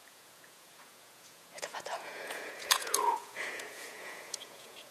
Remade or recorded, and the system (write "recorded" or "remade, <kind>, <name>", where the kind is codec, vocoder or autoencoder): remade, vocoder, Vocos